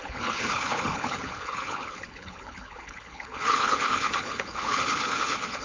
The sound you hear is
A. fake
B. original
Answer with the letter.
A